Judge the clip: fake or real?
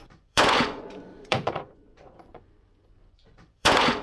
fake